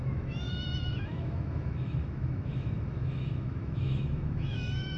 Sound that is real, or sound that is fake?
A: fake